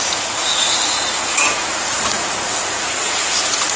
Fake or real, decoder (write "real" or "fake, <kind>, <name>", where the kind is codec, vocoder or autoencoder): fake, vocoder, Vocos